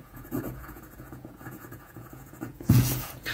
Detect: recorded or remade remade